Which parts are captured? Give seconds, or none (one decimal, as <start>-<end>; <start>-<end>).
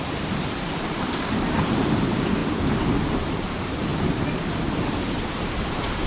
3.9-4.8